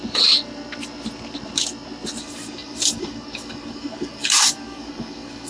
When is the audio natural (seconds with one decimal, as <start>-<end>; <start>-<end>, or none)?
0.0-2.2